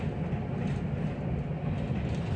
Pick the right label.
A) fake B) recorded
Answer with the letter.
B